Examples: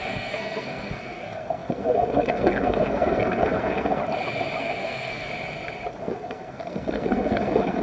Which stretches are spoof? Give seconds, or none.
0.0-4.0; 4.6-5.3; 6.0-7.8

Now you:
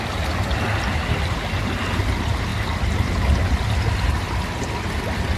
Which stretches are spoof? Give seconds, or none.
none

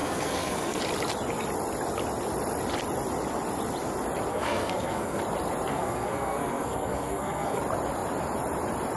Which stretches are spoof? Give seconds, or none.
0.0-0.8; 4.3-5.2; 5.7-7.6

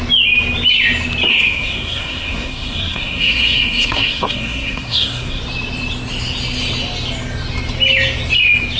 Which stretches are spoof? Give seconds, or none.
1.3-5.4

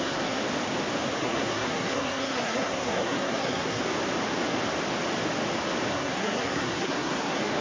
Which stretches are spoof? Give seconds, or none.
0.0-0.4; 1.2-3.8; 5.9-7.6

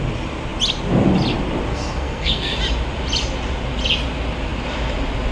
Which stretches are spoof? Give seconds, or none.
1.7-2.6